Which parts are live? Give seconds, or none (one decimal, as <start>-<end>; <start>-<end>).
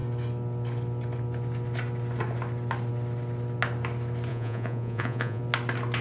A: 0.0-4.3; 5.4-6.0